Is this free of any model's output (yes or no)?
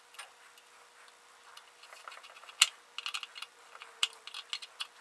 yes